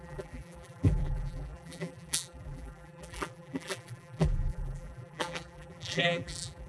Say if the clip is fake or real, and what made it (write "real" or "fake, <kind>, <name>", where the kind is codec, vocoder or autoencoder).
fake, vocoder, BigVGAN v2